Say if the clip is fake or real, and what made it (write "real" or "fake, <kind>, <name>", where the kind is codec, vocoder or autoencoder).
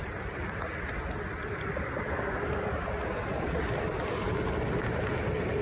real